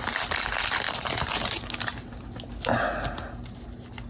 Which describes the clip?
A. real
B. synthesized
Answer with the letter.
A